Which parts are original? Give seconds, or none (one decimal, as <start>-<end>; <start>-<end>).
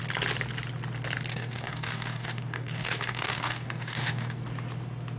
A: 0.0-1.3; 4.4-5.2